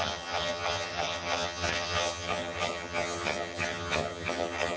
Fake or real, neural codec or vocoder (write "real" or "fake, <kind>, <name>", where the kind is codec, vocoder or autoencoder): fake, vocoder, HiFi-GAN